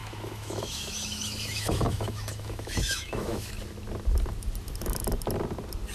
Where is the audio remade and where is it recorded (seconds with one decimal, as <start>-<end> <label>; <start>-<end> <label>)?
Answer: 0.0-3.5 remade; 3.5-5.9 recorded